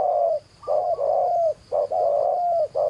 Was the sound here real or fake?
real